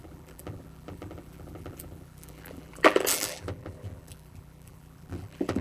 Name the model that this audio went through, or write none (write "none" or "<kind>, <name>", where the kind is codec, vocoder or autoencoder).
vocoder, BigVGAN v2